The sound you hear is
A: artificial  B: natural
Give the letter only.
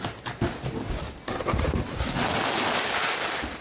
B